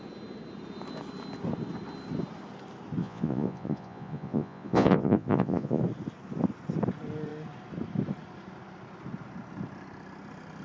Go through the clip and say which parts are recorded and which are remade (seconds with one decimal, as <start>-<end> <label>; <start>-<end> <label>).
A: 0.0-3.0 recorded; 3.0-5.8 remade; 5.8-10.6 recorded